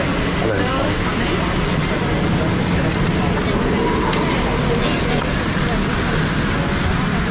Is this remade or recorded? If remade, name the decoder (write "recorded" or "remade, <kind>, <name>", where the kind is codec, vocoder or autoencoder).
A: recorded